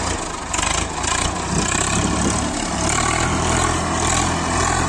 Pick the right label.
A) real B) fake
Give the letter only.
A